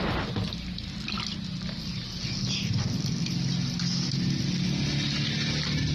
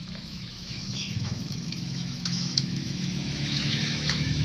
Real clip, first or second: first